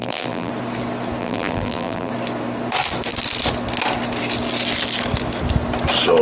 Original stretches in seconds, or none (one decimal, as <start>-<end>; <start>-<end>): 0.5-1.2; 2.1-6.2